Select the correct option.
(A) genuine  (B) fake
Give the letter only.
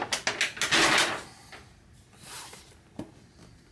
A